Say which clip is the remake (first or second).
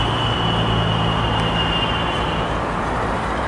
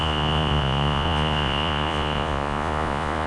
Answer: second